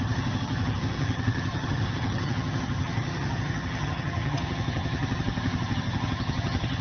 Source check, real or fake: fake